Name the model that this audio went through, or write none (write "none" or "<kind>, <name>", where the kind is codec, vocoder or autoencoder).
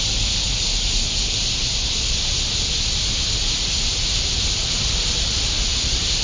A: none